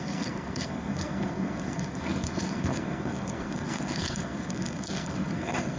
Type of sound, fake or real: fake